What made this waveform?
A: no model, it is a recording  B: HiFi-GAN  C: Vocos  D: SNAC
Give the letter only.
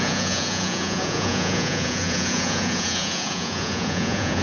C